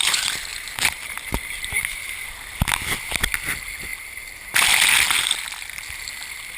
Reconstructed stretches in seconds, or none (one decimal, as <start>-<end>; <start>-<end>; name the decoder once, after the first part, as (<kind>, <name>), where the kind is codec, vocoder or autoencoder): 0.5-2.0 (vocoder, BigVGAN v2)